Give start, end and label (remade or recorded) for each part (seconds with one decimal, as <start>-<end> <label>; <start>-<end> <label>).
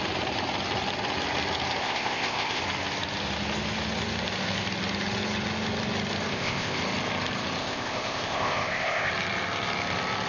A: 0.0-1.8 recorded; 1.8-2.6 remade; 2.6-6.3 recorded; 6.3-6.8 remade; 6.8-7.6 recorded; 7.6-9.1 remade; 9.1-10.3 recorded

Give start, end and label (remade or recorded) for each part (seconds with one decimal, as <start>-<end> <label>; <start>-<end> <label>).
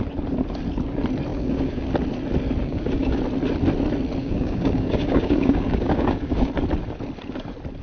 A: 0.0-1.3 recorded; 1.3-1.9 remade; 1.9-2.6 recorded; 2.6-3.2 remade; 3.2-4.2 recorded; 4.2-6.5 remade; 6.5-7.8 recorded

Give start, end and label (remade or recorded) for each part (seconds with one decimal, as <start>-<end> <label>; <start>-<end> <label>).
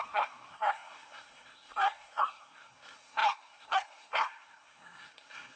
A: 0.0-5.6 remade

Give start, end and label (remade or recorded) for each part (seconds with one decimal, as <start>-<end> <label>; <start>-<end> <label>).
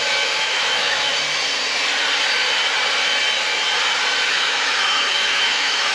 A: 0.0-1.1 remade; 1.1-4.3 recorded; 4.3-5.9 remade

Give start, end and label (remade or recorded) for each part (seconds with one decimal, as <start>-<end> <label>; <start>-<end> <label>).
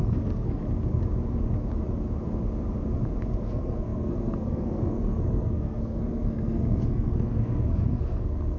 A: 0.0-0.6 remade; 0.6-3.4 recorded; 3.4-8.6 remade